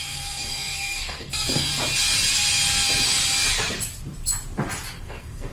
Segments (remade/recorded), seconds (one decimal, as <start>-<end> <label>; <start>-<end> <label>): 0.0-1.7 remade; 1.7-5.0 recorded; 5.0-5.5 remade